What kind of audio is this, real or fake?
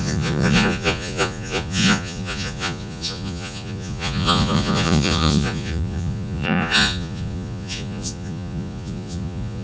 fake